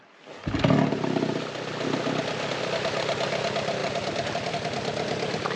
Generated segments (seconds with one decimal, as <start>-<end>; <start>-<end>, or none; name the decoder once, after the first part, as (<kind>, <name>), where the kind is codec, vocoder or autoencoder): none